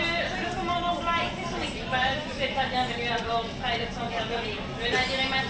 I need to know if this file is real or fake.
real